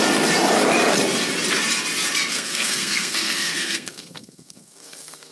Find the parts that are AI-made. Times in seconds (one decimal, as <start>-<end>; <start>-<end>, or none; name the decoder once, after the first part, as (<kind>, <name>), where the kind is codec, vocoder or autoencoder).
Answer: 2.3-5.3 (codec, SNAC)